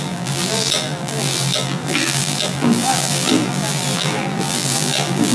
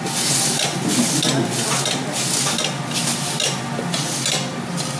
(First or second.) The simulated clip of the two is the first